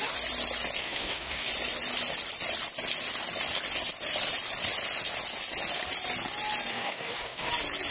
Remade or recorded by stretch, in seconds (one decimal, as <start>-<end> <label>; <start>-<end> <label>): 0.0-0.8 recorded; 0.8-1.5 remade; 1.5-6.7 recorded; 6.7-7.5 remade; 7.5-7.9 recorded